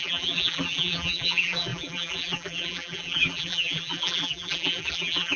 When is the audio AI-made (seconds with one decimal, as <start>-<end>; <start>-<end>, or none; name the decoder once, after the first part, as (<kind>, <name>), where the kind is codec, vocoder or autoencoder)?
0.0-5.4 (vocoder, BigVGAN v2)